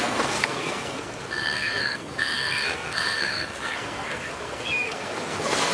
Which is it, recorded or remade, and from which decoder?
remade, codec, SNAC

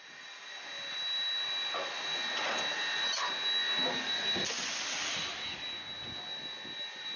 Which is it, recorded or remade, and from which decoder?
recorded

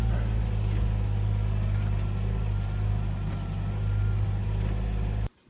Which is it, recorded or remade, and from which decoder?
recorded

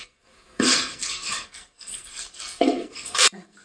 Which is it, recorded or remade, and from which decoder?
remade, codec, SNAC